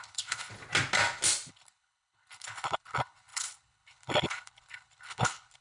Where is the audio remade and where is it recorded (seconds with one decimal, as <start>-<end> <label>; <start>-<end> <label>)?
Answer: 0.0-0.5 remade; 0.5-1.5 recorded; 1.5-5.6 remade